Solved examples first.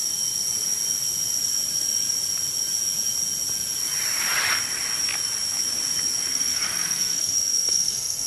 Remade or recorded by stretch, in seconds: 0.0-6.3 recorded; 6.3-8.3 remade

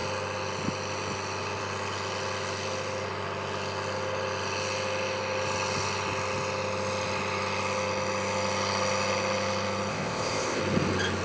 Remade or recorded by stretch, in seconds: 0.0-9.9 recorded; 9.9-10.6 remade; 10.6-11.2 recorded

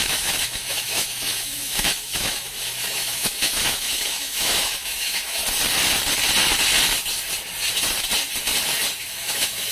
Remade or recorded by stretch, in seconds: 0.0-5.4 remade; 5.4-9.0 recorded; 9.0-9.7 remade

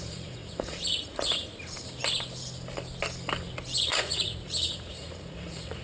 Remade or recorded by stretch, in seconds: 0.0-1.5 remade; 1.5-3.8 recorded; 3.8-5.8 remade

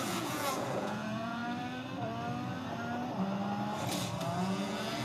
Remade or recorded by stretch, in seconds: 0.0-1.4 remade; 1.4-4.4 recorded; 4.4-5.0 remade